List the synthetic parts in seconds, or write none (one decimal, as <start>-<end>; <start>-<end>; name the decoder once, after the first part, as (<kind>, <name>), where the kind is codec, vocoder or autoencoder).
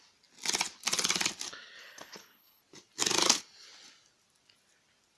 1.8-2.6 (codec, HILCodec)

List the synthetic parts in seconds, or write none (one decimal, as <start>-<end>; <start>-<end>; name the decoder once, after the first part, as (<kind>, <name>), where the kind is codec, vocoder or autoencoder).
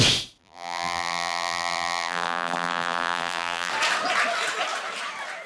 0.4-3.7 (vocoder, BigVGAN v2)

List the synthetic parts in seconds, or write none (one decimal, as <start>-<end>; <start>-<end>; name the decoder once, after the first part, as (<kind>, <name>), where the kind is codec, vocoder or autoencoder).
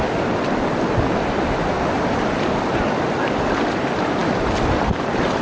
none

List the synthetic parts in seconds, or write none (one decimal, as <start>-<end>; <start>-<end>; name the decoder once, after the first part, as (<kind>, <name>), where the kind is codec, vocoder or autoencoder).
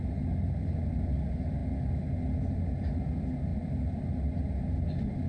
none